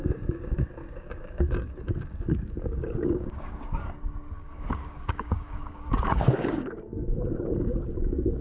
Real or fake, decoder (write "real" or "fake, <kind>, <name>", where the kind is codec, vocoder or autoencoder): fake, codec, DAC